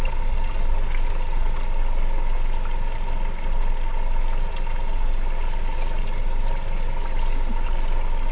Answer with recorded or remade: recorded